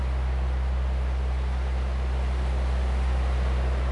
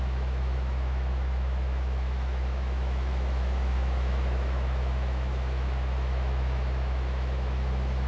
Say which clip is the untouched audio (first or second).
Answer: first